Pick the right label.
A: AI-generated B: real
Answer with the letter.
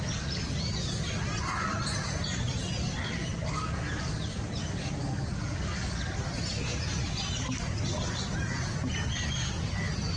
B